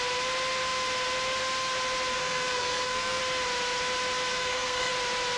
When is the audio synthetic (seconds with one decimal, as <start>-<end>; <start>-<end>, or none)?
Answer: 2.1-3.2; 4.3-4.9